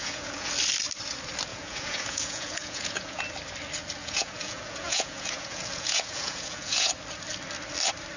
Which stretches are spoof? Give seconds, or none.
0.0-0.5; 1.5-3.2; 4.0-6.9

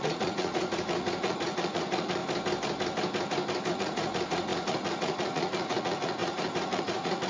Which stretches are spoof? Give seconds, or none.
0.0-2.2; 3.7-7.3

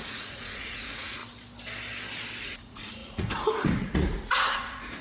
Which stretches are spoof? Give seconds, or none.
0.0-1.2; 2.4-5.0